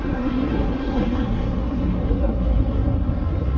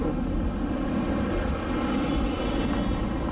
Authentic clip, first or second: second